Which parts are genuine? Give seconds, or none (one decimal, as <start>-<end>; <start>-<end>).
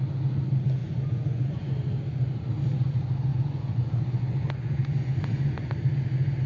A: 0.0-0.8; 1.7-3.3; 5.7-6.5